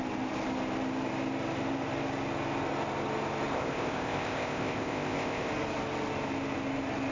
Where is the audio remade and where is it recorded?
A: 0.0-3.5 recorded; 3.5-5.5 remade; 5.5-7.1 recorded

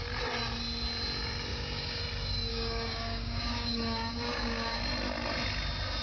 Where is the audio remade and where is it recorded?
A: 0.0-1.5 recorded; 1.5-2.0 remade; 2.0-2.5 recorded; 2.5-4.8 remade; 4.8-6.0 recorded

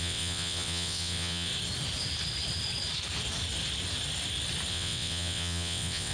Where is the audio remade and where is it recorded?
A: 0.0-1.5 remade; 1.5-4.7 recorded; 4.7-6.1 remade

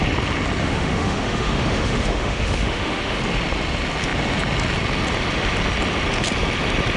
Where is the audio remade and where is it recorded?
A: 0.0-0.6 recorded; 0.6-3.2 remade; 3.2-7.0 recorded

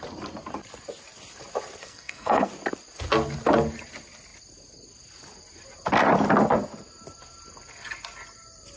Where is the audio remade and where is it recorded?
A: 0.0-1.8 recorded; 1.8-2.5 remade; 2.5-8.8 recorded

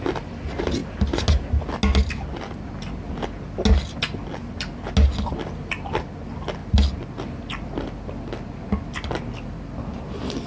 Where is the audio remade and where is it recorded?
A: 0.0-10.5 recorded

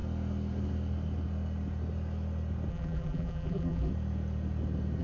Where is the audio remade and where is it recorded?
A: 0.0-2.7 recorded; 2.7-3.9 remade; 3.9-5.0 recorded